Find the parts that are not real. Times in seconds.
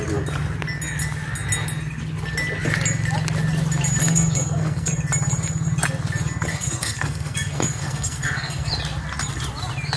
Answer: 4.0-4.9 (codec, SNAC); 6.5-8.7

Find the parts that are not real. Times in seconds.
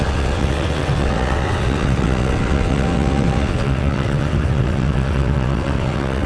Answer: 0.0-6.3 (vocoder, WaveNeXt)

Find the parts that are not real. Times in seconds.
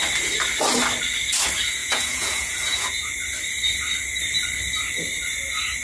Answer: 1.8-3.1 (vocoder, Vocos)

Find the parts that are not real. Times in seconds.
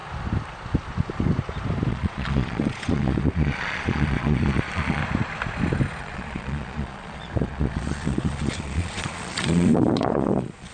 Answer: 1.9-5.0 (vocoder, Vocos); 6.0-10.7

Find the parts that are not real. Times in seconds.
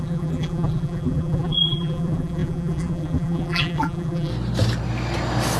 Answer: 0.0-4.3 (vocoder, BigVGAN v2)